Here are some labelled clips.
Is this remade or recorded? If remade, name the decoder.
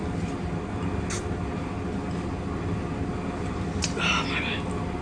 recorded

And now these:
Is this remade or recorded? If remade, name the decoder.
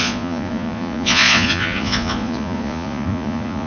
remade, vocoder, Vocos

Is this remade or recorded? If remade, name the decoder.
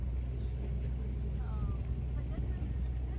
recorded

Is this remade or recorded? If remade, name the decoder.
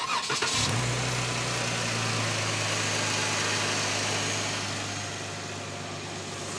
recorded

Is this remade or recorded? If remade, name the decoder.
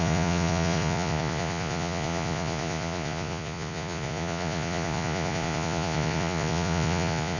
remade, vocoder, Vocos